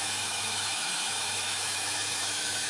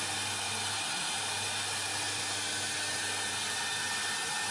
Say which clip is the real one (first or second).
second